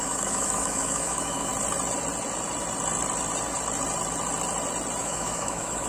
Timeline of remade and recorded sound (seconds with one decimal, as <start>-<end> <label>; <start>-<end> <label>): 0.0-1.5 remade; 1.5-5.0 recorded; 5.0-5.9 remade